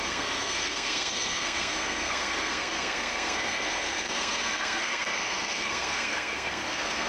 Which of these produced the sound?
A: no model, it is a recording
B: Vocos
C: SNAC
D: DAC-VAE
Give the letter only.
C